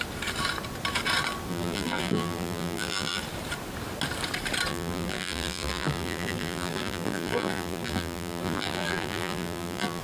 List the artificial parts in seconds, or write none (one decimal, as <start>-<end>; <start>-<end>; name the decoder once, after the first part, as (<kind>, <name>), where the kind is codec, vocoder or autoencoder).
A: 1.5-3.2 (vocoder, BigVGAN v2); 4.7-10.0